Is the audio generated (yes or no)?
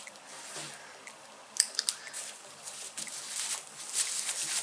no